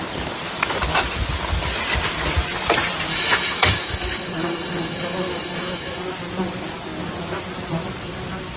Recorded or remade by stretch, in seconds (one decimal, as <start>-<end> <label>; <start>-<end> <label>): 0.0-3.1 recorded; 3.1-6.0 remade; 6.0-8.6 recorded